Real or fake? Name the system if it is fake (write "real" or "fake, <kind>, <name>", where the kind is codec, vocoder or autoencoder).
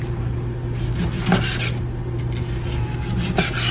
real